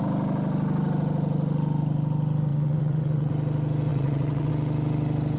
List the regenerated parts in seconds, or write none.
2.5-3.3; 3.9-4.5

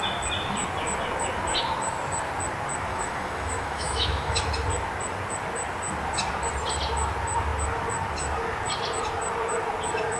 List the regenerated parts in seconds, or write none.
2.9-4.5

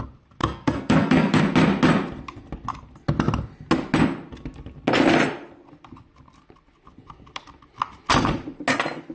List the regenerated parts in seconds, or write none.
0.4-1.4

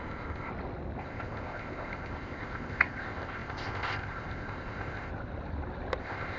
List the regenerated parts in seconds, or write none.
0.0-0.5; 1.0-5.1; 6.0-6.4

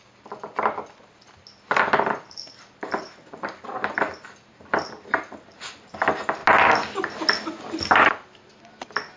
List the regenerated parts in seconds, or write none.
none

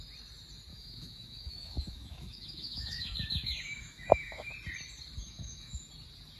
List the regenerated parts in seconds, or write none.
0.7-4.5; 5.2-5.9

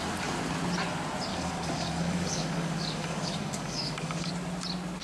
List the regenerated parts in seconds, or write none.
1.3-4.3

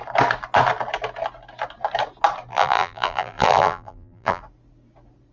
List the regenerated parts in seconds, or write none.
2.5-4.4